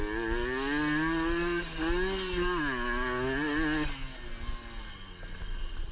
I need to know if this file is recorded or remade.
recorded